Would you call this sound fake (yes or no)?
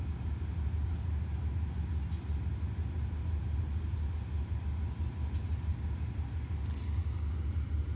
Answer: no